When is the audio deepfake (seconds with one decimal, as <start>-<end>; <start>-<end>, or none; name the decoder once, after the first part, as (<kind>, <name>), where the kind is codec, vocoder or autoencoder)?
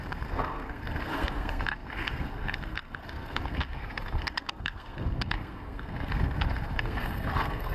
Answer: 0.0-7.7 (codec, SNAC)